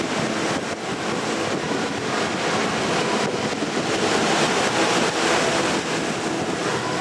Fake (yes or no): no